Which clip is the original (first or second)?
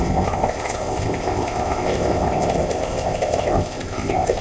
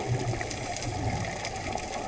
second